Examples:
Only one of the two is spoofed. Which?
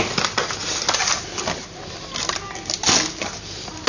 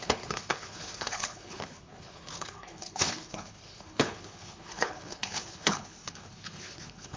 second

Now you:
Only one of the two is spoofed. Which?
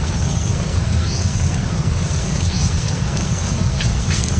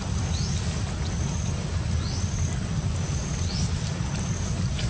first